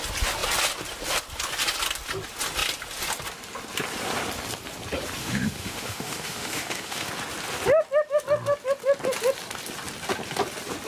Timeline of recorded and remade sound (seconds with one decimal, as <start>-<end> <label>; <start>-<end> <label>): 0.0-5.2 recorded; 5.2-7.1 remade; 7.1-10.9 recorded